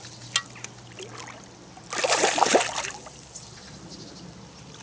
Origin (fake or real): real